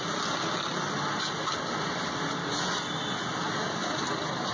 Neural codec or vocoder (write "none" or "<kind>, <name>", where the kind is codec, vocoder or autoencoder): none